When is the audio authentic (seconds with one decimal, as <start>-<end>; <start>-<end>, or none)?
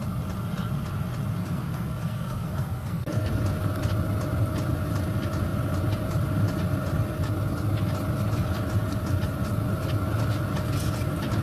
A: 0.0-1.4; 3.3-11.4